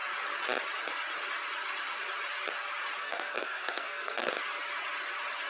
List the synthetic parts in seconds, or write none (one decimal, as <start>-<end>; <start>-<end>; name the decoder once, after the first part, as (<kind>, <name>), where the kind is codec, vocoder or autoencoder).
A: 3.0-4.3 (codec, SNAC)